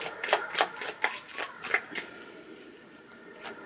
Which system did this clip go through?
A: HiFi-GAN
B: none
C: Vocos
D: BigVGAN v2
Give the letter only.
B